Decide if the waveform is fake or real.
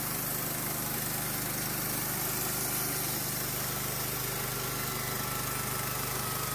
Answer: real